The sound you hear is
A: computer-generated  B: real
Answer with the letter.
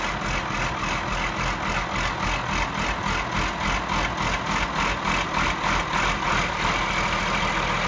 B